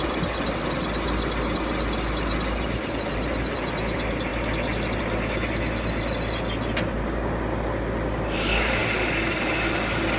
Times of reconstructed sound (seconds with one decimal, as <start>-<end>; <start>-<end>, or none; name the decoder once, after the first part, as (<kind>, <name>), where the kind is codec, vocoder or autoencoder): none